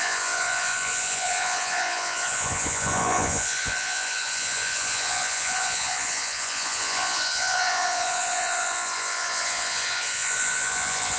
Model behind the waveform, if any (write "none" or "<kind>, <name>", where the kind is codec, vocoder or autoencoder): vocoder, Vocos